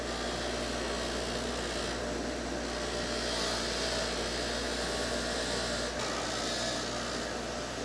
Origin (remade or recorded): recorded